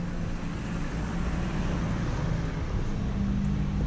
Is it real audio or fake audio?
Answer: real